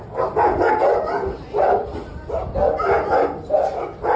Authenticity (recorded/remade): recorded